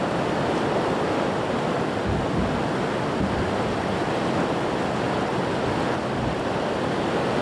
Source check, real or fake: real